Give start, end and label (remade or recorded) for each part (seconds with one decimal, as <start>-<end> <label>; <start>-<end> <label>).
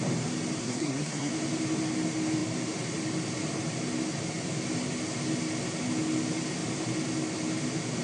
0.0-0.6 recorded; 0.6-1.3 remade; 1.3-8.0 recorded